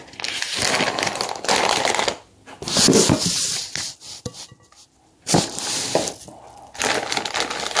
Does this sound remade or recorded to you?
recorded